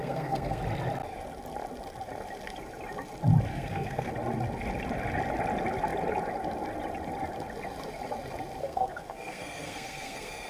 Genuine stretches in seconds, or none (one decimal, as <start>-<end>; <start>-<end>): 0.6-3.5; 4.1-8.6